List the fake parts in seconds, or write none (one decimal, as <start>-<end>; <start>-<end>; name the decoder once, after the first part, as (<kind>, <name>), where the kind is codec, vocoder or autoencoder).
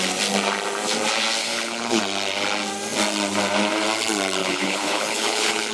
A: 1.4-2.0 (codec, HILCodec); 4.4-5.7